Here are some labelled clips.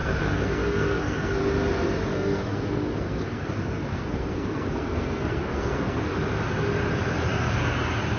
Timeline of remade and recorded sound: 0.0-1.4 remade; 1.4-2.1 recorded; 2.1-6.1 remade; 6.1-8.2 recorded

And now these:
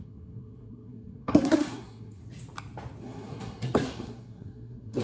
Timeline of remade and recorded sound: 0.0-2.2 remade; 2.2-3.0 recorded; 3.0-5.0 remade